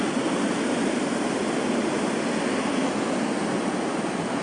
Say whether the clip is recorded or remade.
recorded